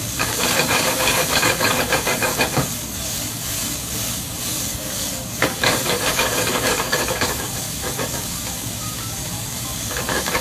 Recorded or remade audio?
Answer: remade